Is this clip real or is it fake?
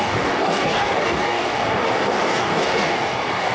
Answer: fake